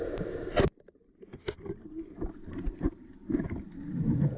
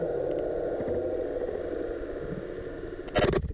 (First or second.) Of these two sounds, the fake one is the first